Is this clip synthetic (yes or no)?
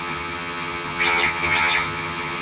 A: yes